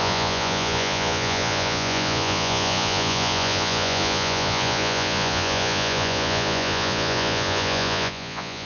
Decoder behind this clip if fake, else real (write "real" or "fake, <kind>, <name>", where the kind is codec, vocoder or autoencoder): fake, vocoder, Vocos